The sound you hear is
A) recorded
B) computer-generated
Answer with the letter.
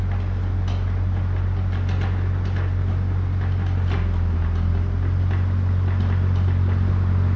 A